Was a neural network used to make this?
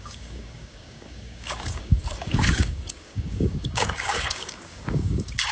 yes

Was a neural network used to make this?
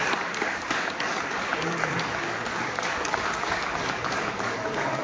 yes